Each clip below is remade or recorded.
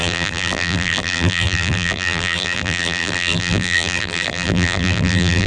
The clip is remade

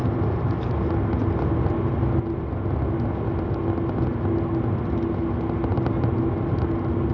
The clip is recorded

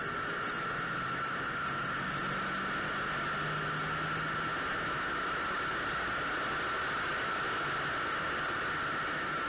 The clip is recorded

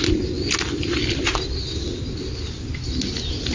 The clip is recorded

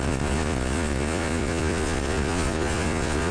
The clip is remade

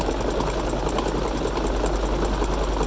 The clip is recorded